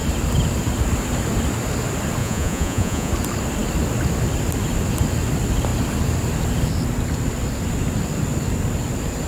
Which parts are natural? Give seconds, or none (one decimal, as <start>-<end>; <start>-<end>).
0.0-2.2; 3.1-9.3